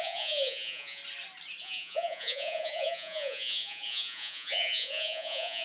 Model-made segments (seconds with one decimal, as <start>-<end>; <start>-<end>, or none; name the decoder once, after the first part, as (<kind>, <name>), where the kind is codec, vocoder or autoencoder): 0.0-1.0 (vocoder, Vocos); 1.6-5.6